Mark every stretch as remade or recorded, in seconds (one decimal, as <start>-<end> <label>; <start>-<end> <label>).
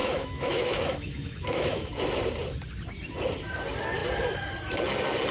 0.0-2.0 remade; 2.0-5.3 recorded